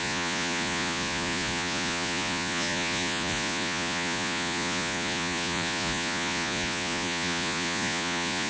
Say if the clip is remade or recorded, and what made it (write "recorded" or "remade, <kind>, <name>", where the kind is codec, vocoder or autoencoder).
remade, vocoder, Vocos